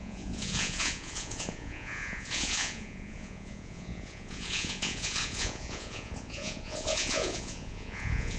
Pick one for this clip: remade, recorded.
remade